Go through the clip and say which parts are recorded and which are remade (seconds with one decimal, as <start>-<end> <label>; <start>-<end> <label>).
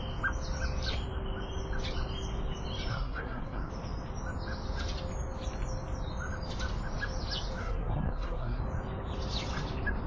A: 0.0-2.9 recorded; 2.9-3.7 remade; 3.7-7.6 recorded; 7.6-8.6 remade; 8.6-10.1 recorded